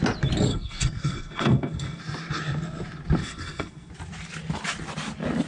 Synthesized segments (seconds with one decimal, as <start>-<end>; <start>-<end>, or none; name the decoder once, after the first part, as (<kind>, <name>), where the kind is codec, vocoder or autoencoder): 0.5-2.0 (codec, SNAC); 3.2-3.9